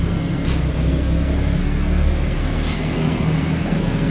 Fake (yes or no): yes